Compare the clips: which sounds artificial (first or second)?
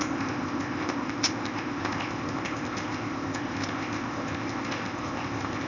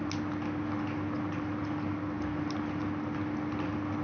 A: first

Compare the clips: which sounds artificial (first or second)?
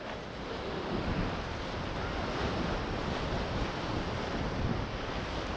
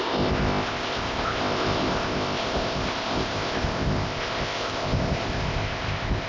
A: second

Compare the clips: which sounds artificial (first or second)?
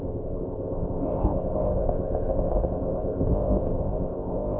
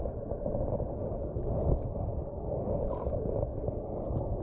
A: first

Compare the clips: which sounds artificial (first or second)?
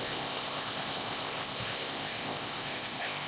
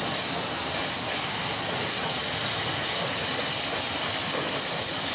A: first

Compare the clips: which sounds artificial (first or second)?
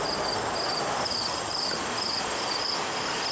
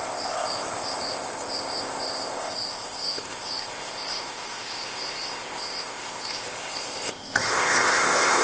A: second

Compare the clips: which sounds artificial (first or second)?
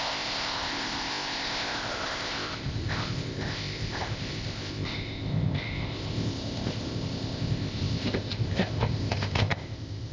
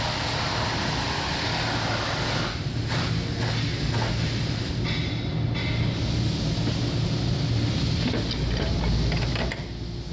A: first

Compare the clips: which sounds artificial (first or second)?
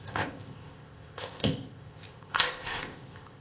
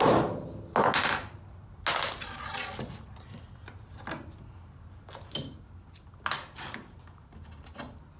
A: first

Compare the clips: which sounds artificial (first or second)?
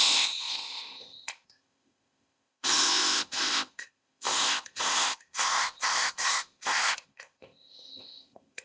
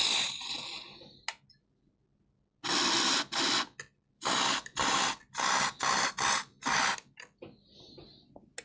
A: first